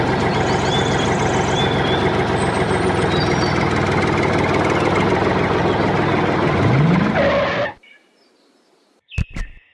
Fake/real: real